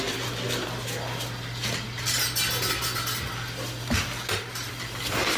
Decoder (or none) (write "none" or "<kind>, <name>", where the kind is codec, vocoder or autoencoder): none